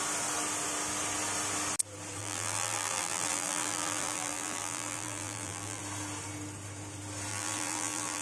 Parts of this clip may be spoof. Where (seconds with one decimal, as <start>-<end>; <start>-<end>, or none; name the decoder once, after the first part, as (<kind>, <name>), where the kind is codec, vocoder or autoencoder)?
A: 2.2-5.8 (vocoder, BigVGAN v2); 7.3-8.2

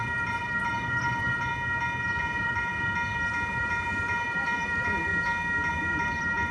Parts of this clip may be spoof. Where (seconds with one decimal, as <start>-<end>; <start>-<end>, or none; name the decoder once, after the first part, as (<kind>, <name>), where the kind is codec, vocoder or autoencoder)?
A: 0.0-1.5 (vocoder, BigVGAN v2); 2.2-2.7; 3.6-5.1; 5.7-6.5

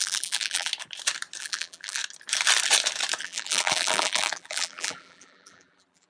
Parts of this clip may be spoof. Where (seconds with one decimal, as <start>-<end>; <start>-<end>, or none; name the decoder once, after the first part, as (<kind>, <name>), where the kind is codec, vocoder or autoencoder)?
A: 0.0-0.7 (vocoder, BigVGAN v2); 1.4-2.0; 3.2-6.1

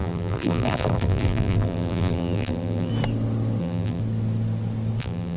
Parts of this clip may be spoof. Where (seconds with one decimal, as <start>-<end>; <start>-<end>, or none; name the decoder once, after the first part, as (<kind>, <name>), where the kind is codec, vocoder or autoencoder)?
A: 0.0-2.9 (vocoder, BigVGAN v2); 3.6-4.0; 5.0-5.4

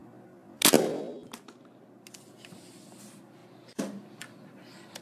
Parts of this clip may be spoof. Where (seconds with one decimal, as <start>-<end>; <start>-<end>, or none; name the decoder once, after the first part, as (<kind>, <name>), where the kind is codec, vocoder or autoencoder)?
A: 2.3-5.0 (vocoder, BigVGAN v2)